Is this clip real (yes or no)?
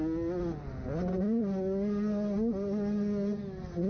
yes